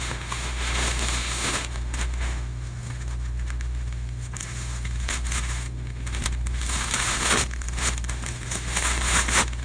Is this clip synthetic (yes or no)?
yes